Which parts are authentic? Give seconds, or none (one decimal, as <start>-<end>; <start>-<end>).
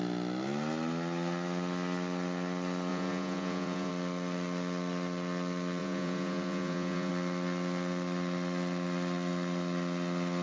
0.0-2.9; 3.9-5.8; 7.1-10.4